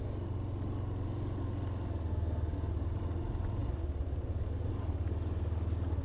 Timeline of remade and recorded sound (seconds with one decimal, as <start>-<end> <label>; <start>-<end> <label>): 0.0-2.1 recorded; 2.1-2.7 remade; 2.7-6.0 recorded